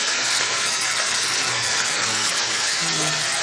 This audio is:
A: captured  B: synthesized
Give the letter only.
B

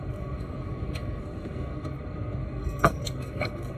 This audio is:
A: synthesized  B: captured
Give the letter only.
A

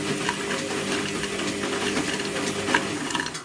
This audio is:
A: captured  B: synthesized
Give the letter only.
A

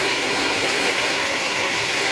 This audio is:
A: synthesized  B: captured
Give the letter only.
A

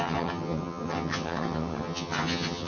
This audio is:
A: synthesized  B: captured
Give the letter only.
A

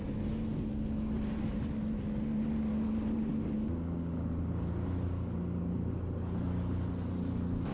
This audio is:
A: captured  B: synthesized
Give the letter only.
A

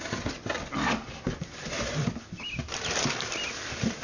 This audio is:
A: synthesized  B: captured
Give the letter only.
A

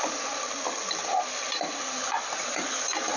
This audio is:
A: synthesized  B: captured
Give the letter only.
B